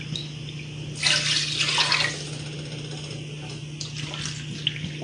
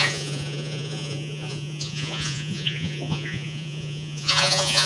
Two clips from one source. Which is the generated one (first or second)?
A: second